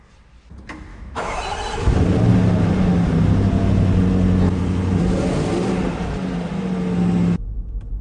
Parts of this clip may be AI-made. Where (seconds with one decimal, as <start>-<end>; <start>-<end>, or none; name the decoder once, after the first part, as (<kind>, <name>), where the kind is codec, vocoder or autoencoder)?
0.9-1.4 (autoencoder, DAC-VAE)